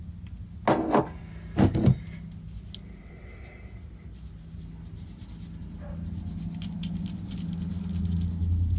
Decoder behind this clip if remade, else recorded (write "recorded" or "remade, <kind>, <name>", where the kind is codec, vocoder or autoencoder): recorded